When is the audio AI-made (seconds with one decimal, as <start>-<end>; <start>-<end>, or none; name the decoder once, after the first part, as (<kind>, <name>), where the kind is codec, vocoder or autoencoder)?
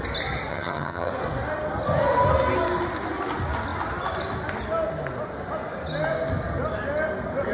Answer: 0.5-1.1 (vocoder, HiFi-GAN)